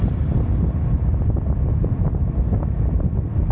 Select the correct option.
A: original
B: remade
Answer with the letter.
A